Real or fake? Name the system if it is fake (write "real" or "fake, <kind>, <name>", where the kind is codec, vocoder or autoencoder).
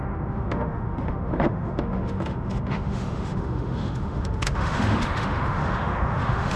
fake, autoencoder, DAC-VAE